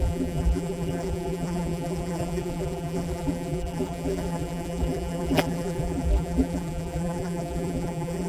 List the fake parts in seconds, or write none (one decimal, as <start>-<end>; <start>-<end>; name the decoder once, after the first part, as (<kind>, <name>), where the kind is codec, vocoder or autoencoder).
0.0-8.3 (vocoder, BigVGAN v2)